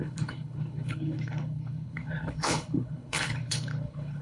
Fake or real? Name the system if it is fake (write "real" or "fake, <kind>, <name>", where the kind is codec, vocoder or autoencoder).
fake, codec, HILCodec